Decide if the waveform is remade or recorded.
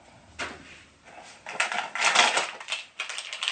recorded